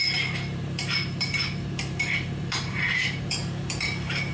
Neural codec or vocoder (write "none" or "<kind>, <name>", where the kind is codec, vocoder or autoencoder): vocoder, BigVGAN v2